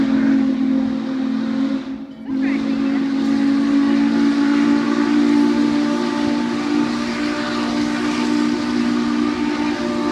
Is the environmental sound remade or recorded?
recorded